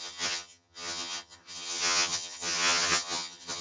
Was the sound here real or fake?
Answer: fake